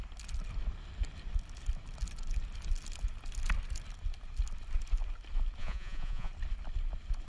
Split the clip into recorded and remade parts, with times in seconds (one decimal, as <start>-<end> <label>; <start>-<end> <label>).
0.0-5.6 recorded; 5.6-6.3 remade; 6.3-7.3 recorded